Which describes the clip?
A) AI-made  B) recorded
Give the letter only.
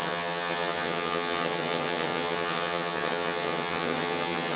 A